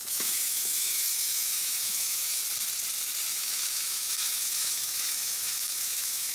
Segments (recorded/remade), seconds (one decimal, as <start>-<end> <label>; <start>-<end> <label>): 0.0-2.4 remade; 2.4-3.3 recorded; 3.3-6.3 remade